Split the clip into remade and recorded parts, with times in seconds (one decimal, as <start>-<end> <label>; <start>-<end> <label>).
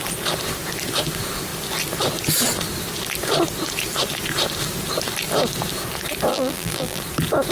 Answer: 0.0-6.3 recorded; 6.3-7.0 remade; 7.0-7.5 recorded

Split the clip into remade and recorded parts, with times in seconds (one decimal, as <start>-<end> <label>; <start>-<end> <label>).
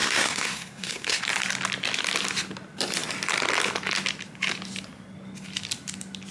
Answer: 0.0-1.2 remade; 1.2-6.3 recorded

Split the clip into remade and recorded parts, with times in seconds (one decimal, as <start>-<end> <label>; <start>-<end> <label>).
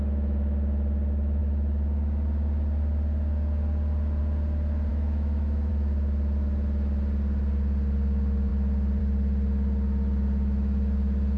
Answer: 0.0-4.9 recorded; 4.9-5.7 remade; 5.7-11.4 recorded